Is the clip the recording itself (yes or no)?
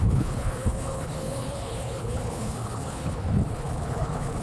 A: no